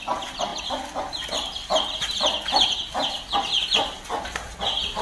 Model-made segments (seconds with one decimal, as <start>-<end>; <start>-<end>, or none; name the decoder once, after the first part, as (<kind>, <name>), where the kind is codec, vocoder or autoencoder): none